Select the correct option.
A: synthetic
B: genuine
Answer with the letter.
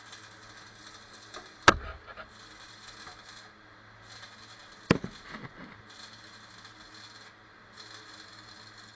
B